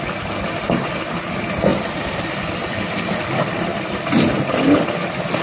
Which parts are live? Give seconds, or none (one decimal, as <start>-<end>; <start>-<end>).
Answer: 0.0-1.7; 4.5-5.4